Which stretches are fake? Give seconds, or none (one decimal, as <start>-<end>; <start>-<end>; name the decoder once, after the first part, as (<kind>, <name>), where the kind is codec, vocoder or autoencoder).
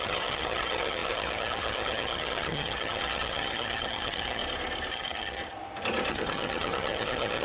0.0-4.4 (vocoder, HiFi-GAN); 4.9-5.4; 6.1-7.4